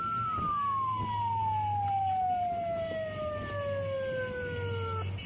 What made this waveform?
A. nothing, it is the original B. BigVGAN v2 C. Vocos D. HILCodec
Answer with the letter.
A